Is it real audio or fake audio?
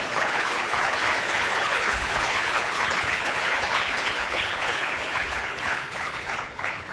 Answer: fake